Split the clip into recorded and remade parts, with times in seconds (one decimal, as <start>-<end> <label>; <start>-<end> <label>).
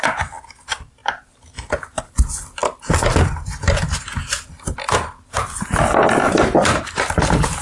0.0-7.6 recorded